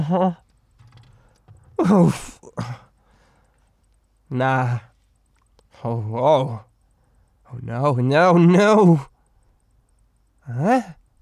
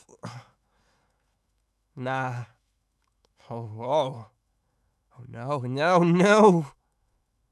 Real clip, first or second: first